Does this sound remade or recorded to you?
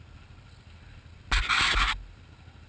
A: recorded